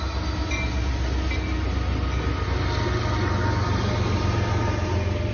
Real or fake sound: real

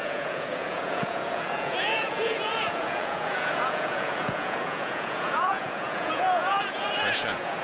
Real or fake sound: fake